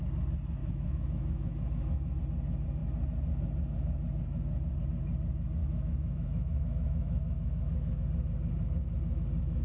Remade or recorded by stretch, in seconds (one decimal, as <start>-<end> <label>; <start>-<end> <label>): 0.0-0.6 recorded; 0.6-2.2 remade; 2.2-5.6 recorded; 5.6-8.0 remade; 8.0-9.6 recorded